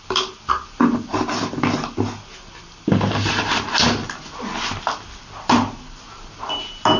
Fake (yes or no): no